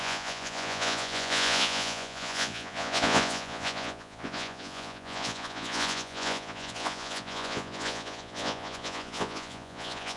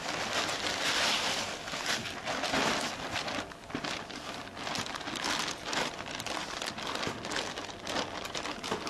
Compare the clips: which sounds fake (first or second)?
first